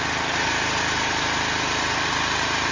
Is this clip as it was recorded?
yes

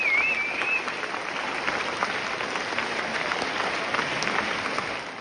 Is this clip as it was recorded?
yes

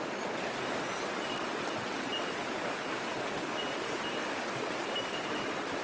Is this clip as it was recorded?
yes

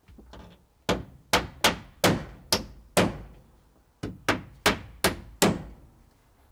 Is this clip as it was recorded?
yes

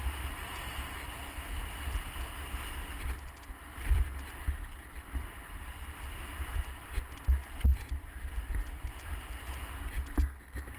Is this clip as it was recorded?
yes